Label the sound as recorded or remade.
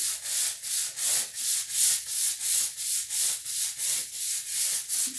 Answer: recorded